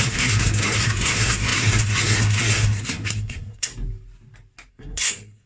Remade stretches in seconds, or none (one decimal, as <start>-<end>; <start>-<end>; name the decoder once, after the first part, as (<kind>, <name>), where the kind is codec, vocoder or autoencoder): 0.0-3.7 (codec, SNAC); 4.7-5.5